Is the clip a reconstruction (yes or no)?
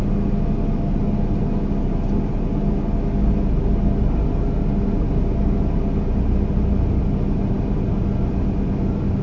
no